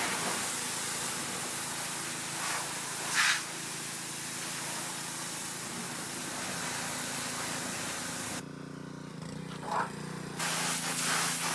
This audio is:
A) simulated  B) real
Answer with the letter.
B